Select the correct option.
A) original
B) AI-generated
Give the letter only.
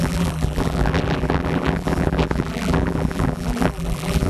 B